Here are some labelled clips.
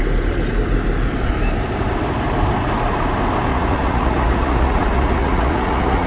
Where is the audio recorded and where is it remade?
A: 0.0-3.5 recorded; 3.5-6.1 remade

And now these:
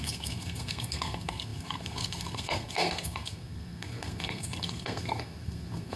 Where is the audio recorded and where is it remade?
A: 0.0-6.0 remade

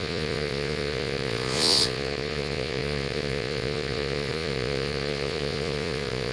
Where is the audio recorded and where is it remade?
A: 0.0-6.3 remade

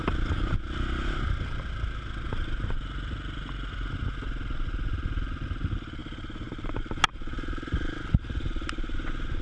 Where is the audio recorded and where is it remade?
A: 0.0-6.0 recorded; 6.0-6.7 remade; 6.7-9.4 recorded

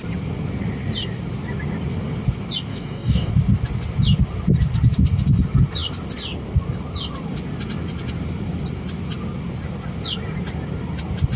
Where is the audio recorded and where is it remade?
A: 0.0-2.7 recorded; 2.7-3.3 remade; 3.3-11.4 recorded

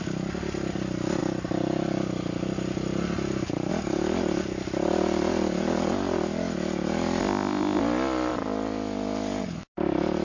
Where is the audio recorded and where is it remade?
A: 0.0-7.2 recorded; 7.2-7.8 remade; 7.8-10.2 recorded

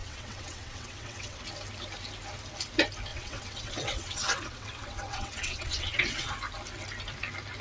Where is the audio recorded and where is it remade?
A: 0.0-1.4 remade; 1.4-3.1 recorded; 3.1-6.3 remade; 6.3-7.6 recorded